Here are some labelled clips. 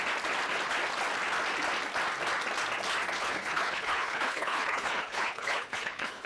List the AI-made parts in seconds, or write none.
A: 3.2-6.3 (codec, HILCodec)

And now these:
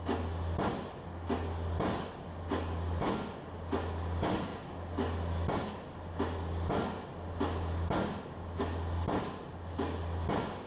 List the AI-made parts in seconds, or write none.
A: none

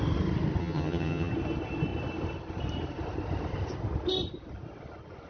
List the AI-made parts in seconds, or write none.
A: 0.6-1.3 (vocoder, HiFi-GAN)

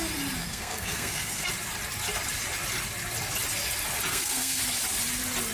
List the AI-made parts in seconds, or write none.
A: 0.4-1.5 (codec, SNAC); 4.1-4.6

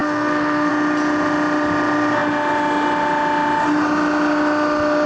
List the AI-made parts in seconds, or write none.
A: 0.0-0.7 (codec, SNAC)